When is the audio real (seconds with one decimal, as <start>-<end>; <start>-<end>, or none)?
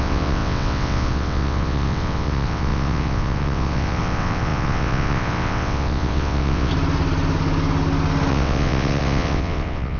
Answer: 6.7-8.3